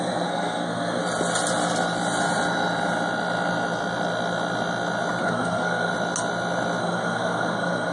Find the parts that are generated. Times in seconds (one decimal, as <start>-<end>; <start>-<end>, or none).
0.0-1.0; 5.2-5.9; 6.8-7.9